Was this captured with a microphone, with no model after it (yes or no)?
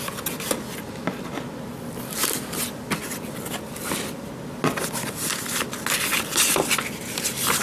yes